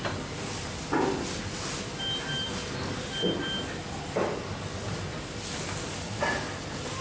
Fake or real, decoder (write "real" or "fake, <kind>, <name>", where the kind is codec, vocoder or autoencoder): real